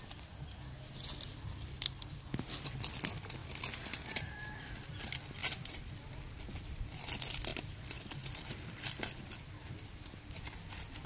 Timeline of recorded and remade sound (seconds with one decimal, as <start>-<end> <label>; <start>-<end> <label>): 0.0-3.4 recorded; 3.4-5.0 remade; 5.0-5.4 recorded; 5.4-6.1 remade; 6.1-7.5 recorded; 7.5-10.4 remade; 10.4-11.1 recorded